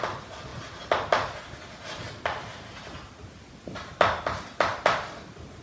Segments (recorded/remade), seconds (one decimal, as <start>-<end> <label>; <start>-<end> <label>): 0.0-5.6 recorded